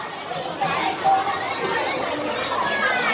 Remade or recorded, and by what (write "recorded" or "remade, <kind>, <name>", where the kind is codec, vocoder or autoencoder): recorded